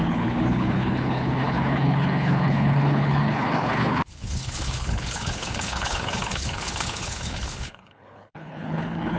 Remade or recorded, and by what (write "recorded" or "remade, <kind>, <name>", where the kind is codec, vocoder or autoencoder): remade, codec, HILCodec